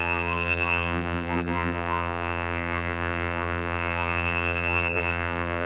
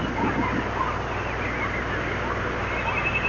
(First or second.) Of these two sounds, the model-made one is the first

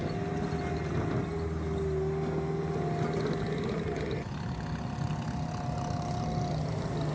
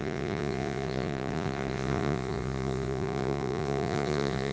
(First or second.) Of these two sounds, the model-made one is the second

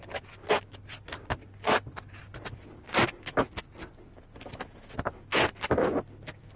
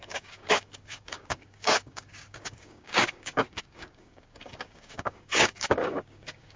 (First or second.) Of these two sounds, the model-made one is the second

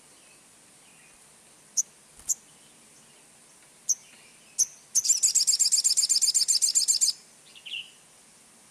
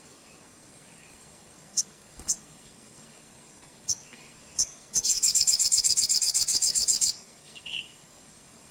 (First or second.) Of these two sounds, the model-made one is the second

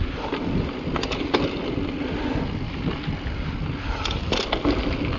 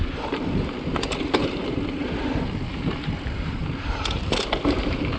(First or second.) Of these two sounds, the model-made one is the second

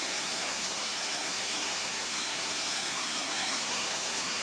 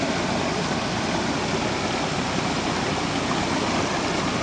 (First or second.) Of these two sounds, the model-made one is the first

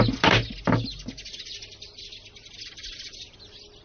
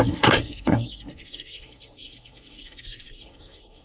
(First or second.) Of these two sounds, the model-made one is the second